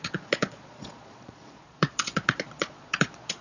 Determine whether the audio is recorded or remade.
remade